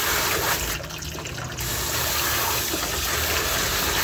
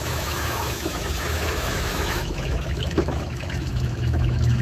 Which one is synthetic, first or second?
second